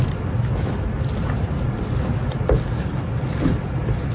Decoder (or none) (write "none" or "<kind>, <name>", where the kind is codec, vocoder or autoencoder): none